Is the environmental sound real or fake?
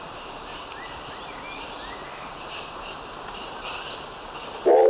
real